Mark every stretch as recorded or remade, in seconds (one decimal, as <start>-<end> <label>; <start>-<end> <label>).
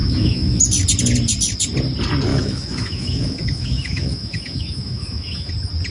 0.0-0.6 remade; 0.6-2.3 recorded; 2.3-5.5 remade; 5.5-5.9 recorded